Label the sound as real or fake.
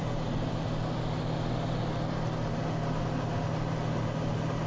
real